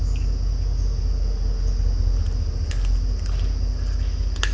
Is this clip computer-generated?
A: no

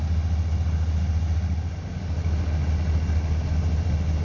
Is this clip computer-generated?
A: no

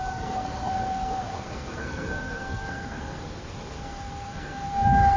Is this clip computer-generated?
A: yes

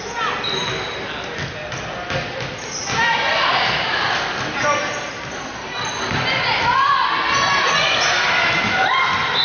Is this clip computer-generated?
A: no